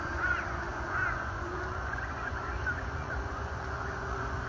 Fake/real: fake